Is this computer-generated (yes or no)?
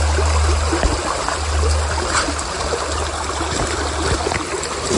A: no